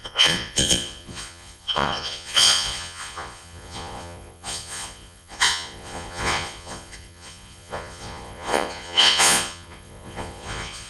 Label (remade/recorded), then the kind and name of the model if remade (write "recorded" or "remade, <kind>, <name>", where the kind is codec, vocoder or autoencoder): remade, vocoder, Vocos